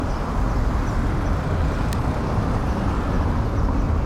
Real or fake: real